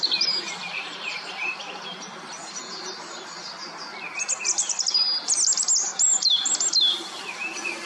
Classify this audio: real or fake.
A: real